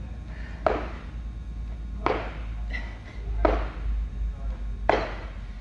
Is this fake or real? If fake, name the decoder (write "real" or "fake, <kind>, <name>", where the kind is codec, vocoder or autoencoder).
real